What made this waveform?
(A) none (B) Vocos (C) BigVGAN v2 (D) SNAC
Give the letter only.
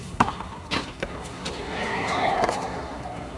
D